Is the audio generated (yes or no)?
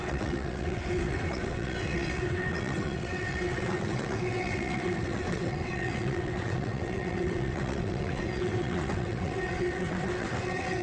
yes